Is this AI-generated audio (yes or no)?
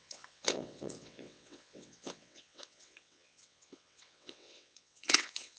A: yes